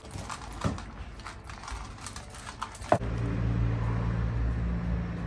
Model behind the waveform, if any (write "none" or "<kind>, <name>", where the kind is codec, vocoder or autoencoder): none